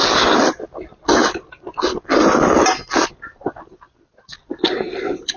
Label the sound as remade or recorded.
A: recorded